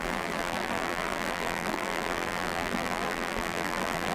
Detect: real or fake fake